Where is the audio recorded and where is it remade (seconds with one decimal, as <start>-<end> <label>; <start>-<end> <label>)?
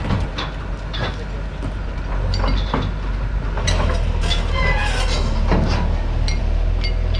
0.0-7.2 recorded